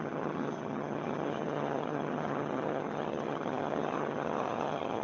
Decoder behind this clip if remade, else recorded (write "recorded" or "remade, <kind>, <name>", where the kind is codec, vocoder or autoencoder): remade, vocoder, HiFi-GAN